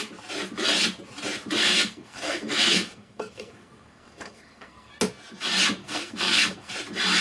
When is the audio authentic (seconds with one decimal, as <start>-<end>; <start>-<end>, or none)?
0.0-1.6; 4.9-5.8; 6.7-7.2